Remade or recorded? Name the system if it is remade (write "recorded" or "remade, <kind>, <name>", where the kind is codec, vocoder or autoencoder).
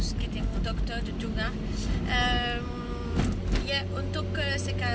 recorded